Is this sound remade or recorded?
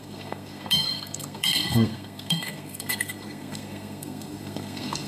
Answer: remade